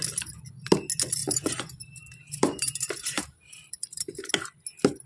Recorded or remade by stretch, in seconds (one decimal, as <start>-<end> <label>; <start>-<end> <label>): 0.0-1.2 recorded; 1.2-4.3 remade; 4.3-5.1 recorded

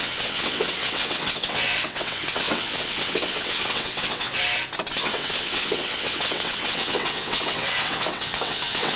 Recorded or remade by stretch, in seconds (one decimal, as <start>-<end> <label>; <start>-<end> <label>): 0.0-4.3 remade; 4.3-5.0 recorded; 5.0-9.0 remade

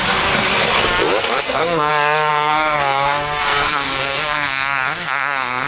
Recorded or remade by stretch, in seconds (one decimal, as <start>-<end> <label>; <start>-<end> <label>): 0.0-1.2 recorded; 1.2-1.9 remade; 1.9-2.3 recorded; 2.3-5.7 remade

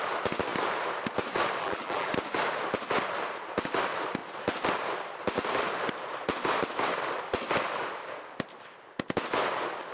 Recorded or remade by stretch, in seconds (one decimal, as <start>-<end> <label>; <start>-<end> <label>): 0.0-1.6 recorded; 1.6-2.1 remade; 2.1-9.9 recorded